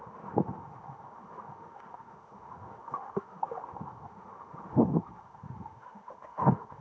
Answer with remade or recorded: remade